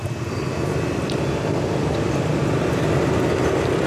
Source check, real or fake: real